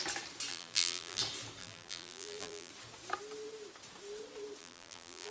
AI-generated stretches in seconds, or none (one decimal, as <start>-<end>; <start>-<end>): 0.5-1.2; 1.6-2.7; 4.6-5.3